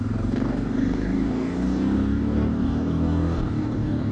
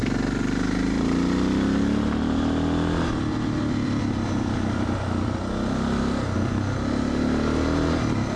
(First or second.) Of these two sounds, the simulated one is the first